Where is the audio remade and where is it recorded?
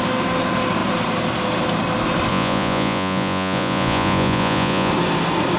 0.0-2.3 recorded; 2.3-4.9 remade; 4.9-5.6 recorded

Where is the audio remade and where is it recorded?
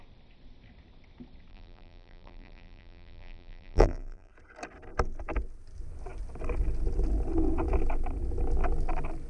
0.0-1.5 recorded; 1.5-4.3 remade; 4.3-9.3 recorded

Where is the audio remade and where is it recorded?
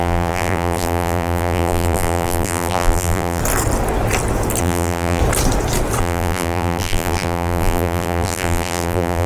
0.0-3.4 remade; 3.4-4.6 recorded; 4.6-5.2 remade; 5.2-6.0 recorded; 6.0-9.3 remade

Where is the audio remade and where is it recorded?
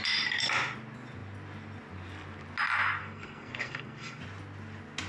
0.0-3.0 recorded; 3.0-4.2 remade; 4.2-5.1 recorded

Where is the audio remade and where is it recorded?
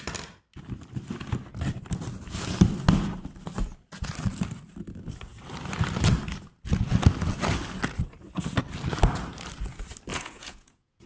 0.0-10.1 recorded; 10.1-11.1 remade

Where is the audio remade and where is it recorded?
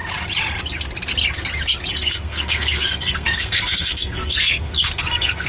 0.0-1.9 recorded; 1.9-5.5 remade